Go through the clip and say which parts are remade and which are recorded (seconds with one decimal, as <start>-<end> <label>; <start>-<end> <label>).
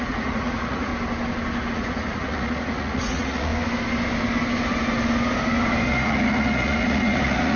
0.0-0.9 remade; 0.9-1.7 recorded; 1.7-3.5 remade; 3.5-5.9 recorded; 5.9-7.6 remade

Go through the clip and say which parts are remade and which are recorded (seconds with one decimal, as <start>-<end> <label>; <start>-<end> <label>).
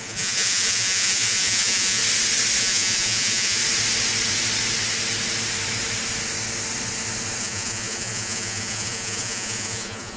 0.0-2.0 remade; 2.0-2.6 recorded; 2.6-3.6 remade; 3.6-7.4 recorded; 7.4-10.2 remade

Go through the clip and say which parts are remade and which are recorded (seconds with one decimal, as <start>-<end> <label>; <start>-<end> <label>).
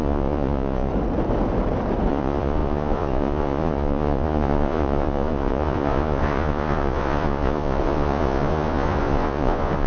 0.0-0.9 remade; 0.9-2.1 recorded; 2.1-9.9 remade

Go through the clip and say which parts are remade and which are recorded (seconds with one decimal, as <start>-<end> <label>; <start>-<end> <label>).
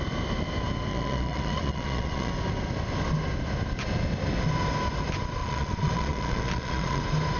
0.0-0.9 recorded; 0.9-2.3 remade; 2.3-5.4 recorded; 5.4-7.0 remade; 7.0-7.4 recorded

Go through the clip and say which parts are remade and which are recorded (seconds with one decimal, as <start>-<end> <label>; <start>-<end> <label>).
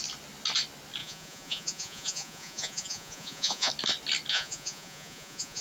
0.0-1.0 recorded; 1.0-3.7 remade; 3.7-4.3 recorded; 4.3-5.6 remade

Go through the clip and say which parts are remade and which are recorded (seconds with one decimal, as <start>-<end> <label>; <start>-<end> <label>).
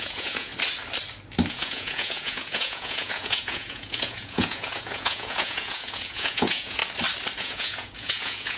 0.0-0.5 remade; 0.5-1.5 recorded; 1.5-6.8 remade; 6.8-7.4 recorded; 7.4-8.6 remade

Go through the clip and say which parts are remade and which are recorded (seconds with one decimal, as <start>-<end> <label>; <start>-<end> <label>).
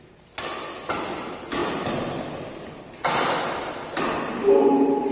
0.0-5.1 recorded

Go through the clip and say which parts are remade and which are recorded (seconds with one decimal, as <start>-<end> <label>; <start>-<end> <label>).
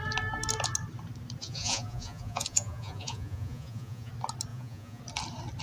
0.0-1.4 recorded; 1.4-4.1 remade; 4.1-4.5 recorded; 4.5-5.0 remade; 5.0-5.6 recorded